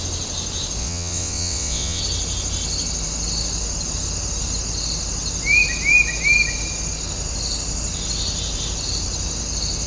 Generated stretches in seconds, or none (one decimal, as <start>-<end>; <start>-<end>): 0.8-2.0